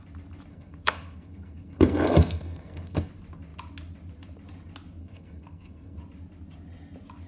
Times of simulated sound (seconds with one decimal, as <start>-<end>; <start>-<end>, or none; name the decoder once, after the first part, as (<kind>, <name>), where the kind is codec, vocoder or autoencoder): 0.5-3.1 (codec, SNAC); 5.0-6.0